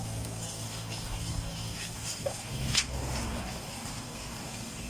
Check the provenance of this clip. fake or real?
fake